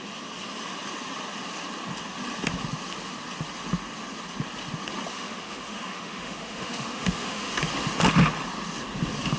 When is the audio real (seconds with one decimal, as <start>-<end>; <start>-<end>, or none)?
0.0-5.1; 7.5-9.4